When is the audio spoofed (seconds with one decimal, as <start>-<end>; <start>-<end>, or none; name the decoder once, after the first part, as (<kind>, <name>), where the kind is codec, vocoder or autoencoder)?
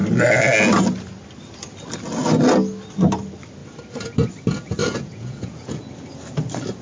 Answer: 4.8-5.8 (vocoder, Vocos)